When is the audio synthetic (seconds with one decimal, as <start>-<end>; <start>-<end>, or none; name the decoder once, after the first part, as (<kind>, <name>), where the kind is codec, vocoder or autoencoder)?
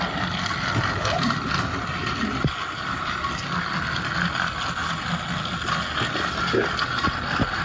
none